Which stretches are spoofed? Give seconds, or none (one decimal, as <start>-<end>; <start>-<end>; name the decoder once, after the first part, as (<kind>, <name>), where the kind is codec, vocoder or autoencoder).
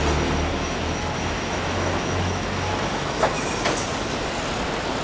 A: 0.5-3.5 (autoencoder, DAC-VAE)